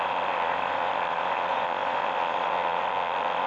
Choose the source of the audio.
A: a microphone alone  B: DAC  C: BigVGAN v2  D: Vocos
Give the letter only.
D